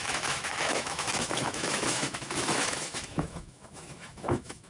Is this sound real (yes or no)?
no